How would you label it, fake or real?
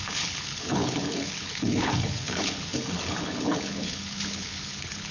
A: fake